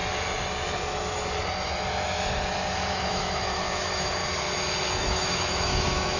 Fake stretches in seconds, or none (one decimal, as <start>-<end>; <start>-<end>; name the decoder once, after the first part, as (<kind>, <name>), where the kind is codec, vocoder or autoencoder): 2.9-4.2 (autoencoder, DAC-VAE); 4.9-6.2